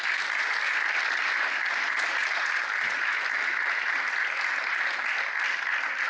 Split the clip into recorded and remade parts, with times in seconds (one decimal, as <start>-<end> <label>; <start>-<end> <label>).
0.0-6.1 recorded

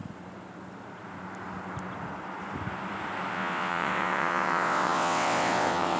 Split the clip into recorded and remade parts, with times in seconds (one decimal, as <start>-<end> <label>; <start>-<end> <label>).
0.0-3.3 recorded; 3.3-6.0 remade

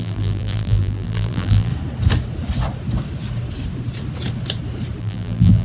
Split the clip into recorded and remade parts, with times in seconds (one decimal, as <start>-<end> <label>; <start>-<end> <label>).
0.0-1.7 remade; 1.7-5.0 recorded; 5.0-5.6 remade

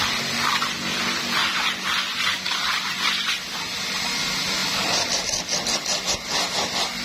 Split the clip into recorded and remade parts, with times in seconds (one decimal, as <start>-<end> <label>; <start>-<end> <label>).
0.0-7.0 recorded

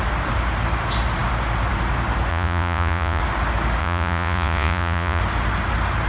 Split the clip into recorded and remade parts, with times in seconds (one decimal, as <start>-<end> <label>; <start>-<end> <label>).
0.0-2.3 recorded; 2.3-3.2 remade; 3.2-3.8 recorded; 3.8-5.2 remade; 5.2-6.1 recorded